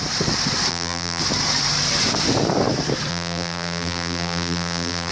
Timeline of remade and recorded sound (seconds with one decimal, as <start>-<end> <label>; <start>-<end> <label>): 0.0-0.7 recorded; 0.7-1.2 remade; 1.2-3.1 recorded; 3.1-5.1 remade